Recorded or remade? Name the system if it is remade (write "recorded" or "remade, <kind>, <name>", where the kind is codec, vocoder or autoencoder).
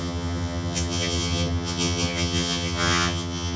remade, vocoder, HiFi-GAN